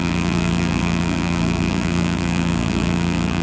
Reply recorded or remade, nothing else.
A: remade